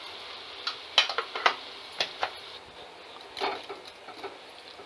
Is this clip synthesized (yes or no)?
no